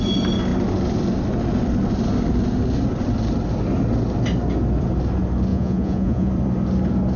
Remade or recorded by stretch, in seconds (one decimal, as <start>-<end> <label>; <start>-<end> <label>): 0.0-5.5 recorded; 5.5-6.3 remade; 6.3-7.2 recorded